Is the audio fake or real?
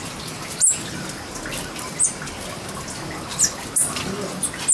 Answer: real